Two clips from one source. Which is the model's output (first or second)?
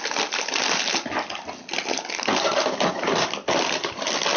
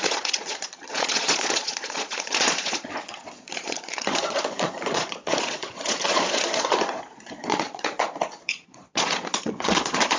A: second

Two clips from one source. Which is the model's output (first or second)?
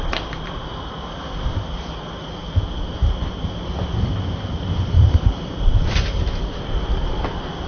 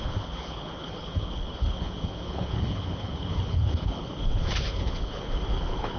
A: second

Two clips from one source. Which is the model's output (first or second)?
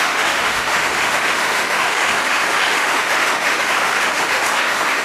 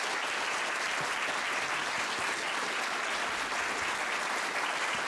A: first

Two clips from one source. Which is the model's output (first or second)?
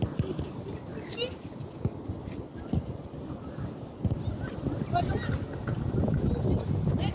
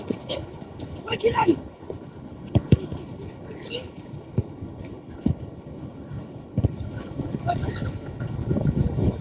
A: second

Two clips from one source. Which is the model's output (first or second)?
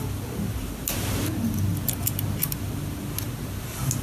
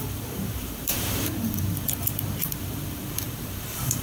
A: second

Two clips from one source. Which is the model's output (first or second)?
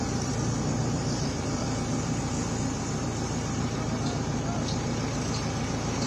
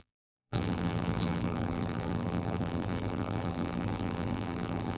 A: second